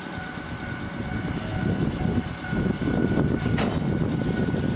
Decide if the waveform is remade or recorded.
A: recorded